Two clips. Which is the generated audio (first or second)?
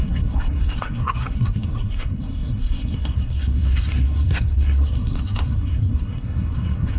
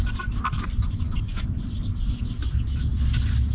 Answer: first